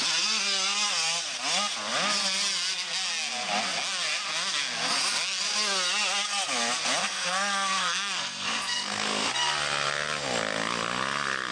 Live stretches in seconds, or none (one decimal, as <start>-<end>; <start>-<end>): 0.0-7.0; 9.3-11.5